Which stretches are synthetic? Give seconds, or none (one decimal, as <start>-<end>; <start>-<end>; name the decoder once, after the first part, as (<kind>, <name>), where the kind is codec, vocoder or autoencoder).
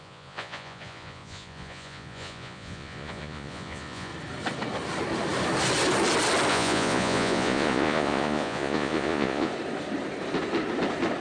0.0-4.1 (vocoder, Vocos); 6.5-9.5